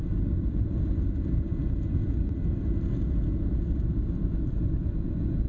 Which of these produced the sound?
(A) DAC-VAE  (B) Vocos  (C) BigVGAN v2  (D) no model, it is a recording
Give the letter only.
D